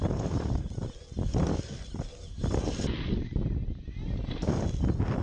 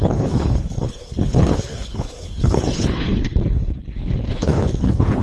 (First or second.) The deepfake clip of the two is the second